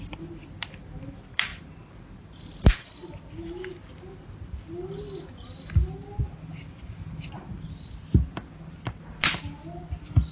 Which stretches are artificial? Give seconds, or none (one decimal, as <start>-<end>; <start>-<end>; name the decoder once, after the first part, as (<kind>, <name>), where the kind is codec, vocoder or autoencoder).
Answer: none